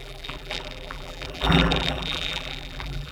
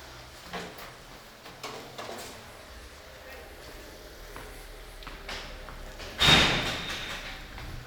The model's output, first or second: first